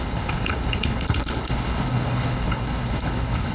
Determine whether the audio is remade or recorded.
remade